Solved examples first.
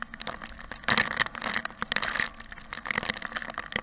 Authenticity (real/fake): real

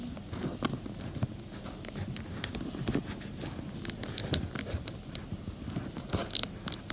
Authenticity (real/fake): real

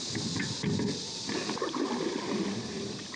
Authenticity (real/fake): real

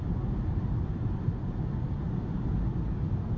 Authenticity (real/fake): real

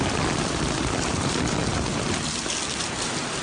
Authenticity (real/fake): real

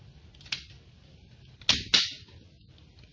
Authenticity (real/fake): real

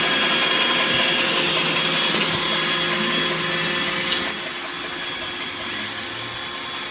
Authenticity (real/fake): real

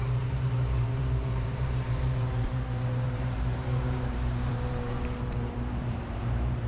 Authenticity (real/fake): fake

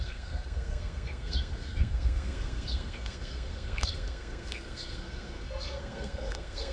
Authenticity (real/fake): fake